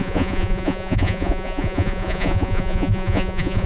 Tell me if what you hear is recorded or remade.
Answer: remade